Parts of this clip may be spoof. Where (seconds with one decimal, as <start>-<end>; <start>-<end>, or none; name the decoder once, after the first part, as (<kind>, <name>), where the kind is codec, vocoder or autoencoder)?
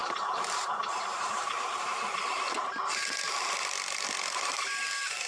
0.0-2.4 (vocoder, BigVGAN v2)